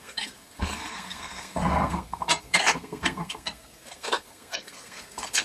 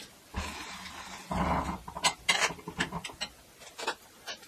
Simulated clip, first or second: first